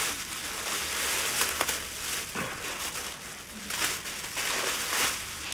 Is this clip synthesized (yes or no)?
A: no